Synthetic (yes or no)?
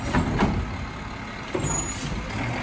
no